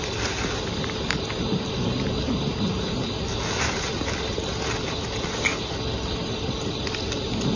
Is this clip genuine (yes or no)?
yes